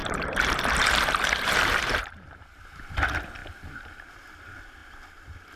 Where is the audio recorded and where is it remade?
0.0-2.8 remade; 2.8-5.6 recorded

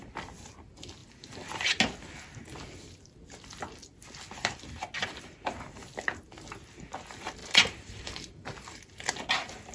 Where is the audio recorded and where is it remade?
0.0-7.4 recorded; 7.4-8.5 remade; 8.5-9.7 recorded

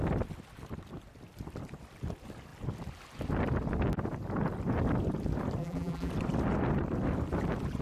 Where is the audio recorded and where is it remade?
0.0-5.6 recorded; 5.6-6.1 remade; 6.1-7.8 recorded